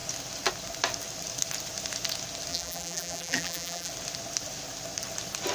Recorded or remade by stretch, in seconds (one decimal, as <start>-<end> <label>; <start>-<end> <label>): 0.0-2.5 recorded; 2.5-3.9 remade; 3.9-5.5 recorded

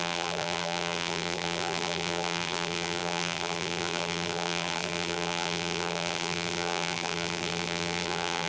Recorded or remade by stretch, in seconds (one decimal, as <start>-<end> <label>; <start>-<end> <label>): 0.0-8.5 remade

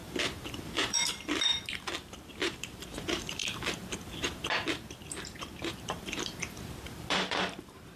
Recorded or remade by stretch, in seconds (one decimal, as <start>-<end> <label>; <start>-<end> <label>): 0.0-8.0 remade

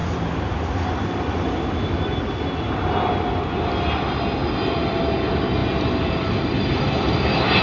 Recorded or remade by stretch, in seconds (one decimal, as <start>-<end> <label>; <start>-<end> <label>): 0.0-2.7 remade; 2.7-4.4 recorded; 4.4-5.0 remade; 5.0-5.6 recorded; 5.6-7.6 remade

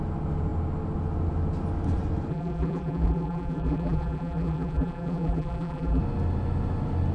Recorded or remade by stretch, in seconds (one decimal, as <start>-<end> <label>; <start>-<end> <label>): 0.0-2.3 recorded; 2.3-6.0 remade; 6.0-7.1 recorded

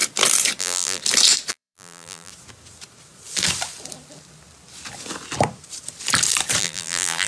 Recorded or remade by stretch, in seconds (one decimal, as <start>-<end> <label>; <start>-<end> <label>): 0.0-0.6 recorded; 0.6-1.0 remade; 1.0-1.5 recorded; 1.5-2.3 remade; 2.3-6.6 recorded; 6.6-7.3 remade

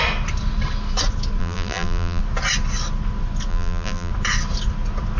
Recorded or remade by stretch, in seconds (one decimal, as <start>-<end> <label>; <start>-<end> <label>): 0.0-1.4 recorded; 1.4-2.2 remade; 2.2-3.5 recorded; 3.5-4.1 remade; 4.1-5.2 recorded